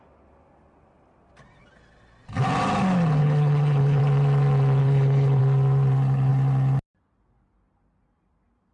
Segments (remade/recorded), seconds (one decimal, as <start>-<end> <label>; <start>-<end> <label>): 0.0-3.2 recorded; 3.2-4.0 remade; 4.0-4.8 recorded; 4.8-5.4 remade; 5.4-8.7 recorded

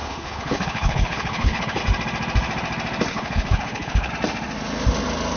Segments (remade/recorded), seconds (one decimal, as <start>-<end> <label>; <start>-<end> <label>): 0.0-1.8 remade; 1.8-3.1 recorded; 3.1-4.1 remade; 4.1-5.4 recorded

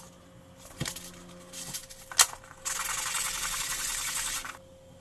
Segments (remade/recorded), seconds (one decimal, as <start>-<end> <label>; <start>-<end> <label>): 0.0-5.0 recorded

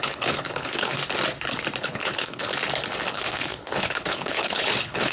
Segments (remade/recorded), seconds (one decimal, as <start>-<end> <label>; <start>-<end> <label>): 0.0-1.0 remade; 1.0-1.8 recorded; 1.8-2.5 remade; 2.5-3.1 recorded; 3.1-5.1 remade

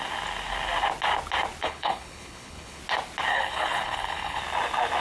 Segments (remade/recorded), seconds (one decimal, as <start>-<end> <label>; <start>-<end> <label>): 0.0-1.6 recorded; 1.6-2.8 remade; 2.8-3.3 recorded; 3.3-4.4 remade; 4.4-5.0 recorded

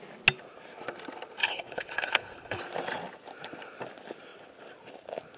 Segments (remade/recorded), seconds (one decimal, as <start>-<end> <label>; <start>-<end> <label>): 0.0-1.4 recorded; 1.4-2.6 remade; 2.6-5.4 recorded

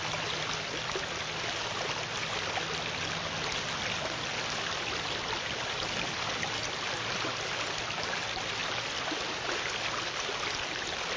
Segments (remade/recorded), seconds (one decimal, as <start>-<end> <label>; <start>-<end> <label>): 0.0-11.2 recorded